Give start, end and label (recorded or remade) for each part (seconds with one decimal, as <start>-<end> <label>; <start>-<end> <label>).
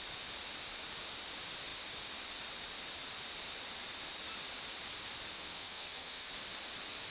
0.0-5.3 recorded; 5.3-6.3 remade; 6.3-7.1 recorded